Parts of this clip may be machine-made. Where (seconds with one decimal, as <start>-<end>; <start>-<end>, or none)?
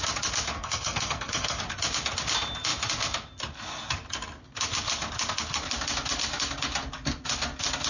0.5-1.6